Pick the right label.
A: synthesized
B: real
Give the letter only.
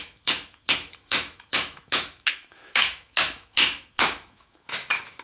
A